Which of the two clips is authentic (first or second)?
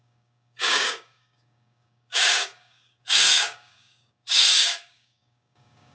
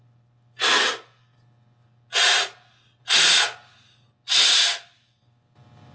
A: second